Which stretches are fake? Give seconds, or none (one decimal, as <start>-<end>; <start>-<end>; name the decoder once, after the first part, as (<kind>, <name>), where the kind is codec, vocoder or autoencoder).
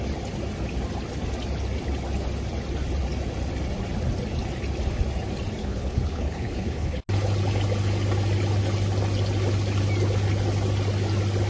5.6-7.0 (codec, HILCodec)